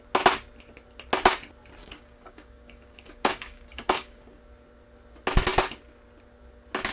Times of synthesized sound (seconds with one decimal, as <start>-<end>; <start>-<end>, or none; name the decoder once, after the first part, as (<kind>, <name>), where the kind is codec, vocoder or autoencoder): 1.8-4.4 (codec, DAC)